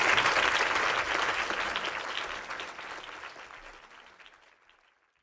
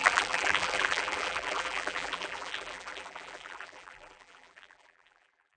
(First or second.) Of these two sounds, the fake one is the second